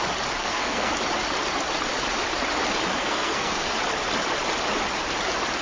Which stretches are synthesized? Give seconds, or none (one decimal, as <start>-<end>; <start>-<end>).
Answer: 0.4-0.9; 3.0-3.7